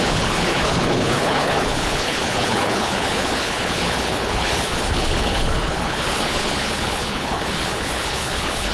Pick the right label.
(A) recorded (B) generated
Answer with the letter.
B